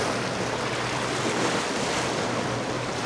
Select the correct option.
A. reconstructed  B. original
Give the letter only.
B